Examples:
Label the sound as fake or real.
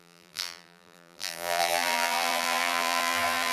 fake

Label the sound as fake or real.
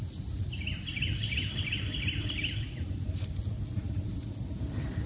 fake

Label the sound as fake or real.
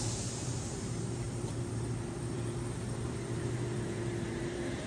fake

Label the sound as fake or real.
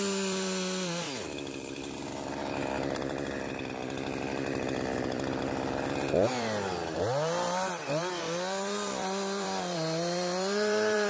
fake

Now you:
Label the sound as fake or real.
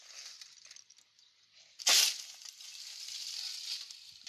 real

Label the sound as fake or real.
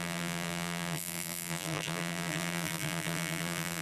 fake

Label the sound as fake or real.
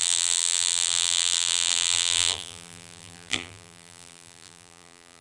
fake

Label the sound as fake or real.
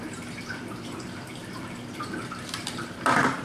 fake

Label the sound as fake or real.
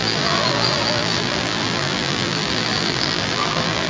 fake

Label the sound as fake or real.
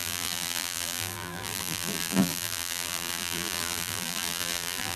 fake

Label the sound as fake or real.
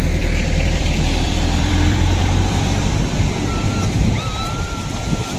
fake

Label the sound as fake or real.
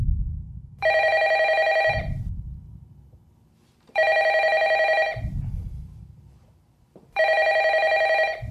fake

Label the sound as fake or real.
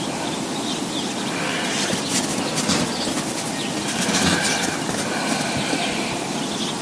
real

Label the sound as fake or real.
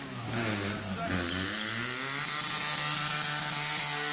real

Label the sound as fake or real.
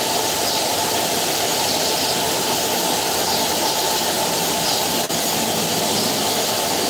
real